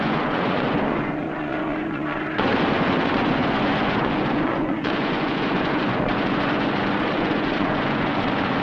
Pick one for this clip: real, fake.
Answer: fake